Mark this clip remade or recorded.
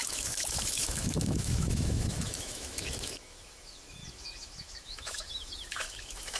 remade